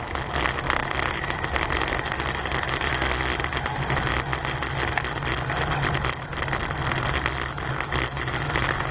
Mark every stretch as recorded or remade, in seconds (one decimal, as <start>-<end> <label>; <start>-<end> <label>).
0.0-8.9 recorded